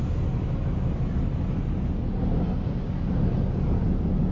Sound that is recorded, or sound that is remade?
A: recorded